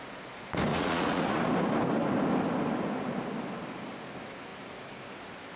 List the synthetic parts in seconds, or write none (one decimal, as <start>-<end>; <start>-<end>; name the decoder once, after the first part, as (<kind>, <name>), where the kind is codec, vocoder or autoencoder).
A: 0.7-1.5 (vocoder, Vocos)